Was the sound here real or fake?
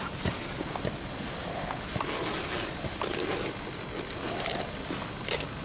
real